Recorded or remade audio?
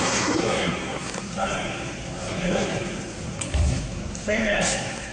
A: remade